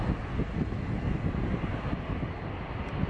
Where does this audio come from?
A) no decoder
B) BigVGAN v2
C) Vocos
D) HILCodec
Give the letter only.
A